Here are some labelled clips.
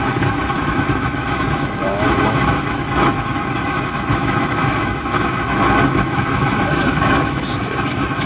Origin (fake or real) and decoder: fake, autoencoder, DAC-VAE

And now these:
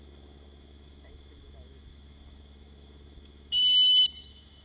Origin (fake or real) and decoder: fake, autoencoder, DAC-VAE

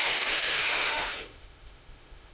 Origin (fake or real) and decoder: fake, autoencoder, DAC-VAE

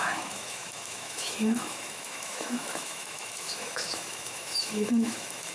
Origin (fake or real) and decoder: fake, autoencoder, DAC-VAE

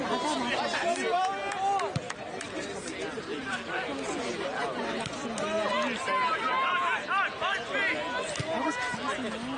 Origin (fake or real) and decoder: real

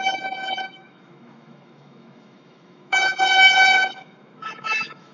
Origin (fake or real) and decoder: fake, autoencoder, DAC-VAE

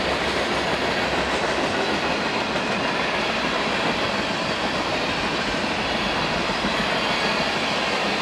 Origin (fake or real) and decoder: real